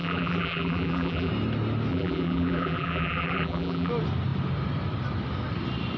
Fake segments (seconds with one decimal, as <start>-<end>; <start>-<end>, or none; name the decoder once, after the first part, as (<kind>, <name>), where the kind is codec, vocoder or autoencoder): 0.0-1.3 (vocoder, BigVGAN v2); 1.9-3.9